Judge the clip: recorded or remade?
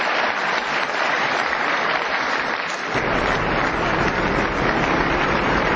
recorded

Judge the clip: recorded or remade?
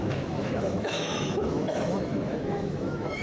remade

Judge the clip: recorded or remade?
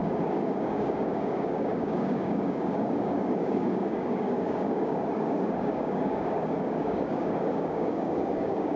remade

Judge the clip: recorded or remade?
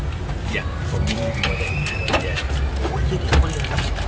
recorded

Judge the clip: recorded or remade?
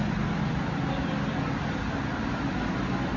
recorded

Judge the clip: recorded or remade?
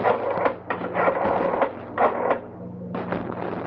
recorded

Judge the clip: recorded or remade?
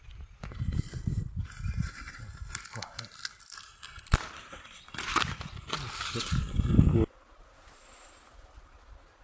recorded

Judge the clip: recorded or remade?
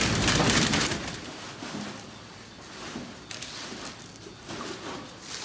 recorded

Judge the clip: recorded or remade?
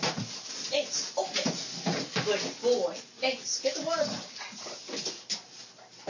recorded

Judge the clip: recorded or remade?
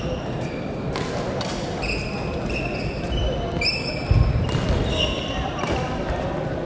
recorded